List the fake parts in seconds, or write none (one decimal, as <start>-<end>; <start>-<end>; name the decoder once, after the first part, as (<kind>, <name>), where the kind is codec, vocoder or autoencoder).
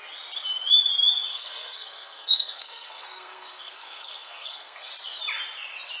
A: 1.3-4.9 (codec, SNAC)